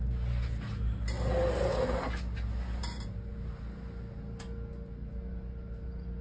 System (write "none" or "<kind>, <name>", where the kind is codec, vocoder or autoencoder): none